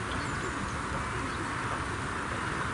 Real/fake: real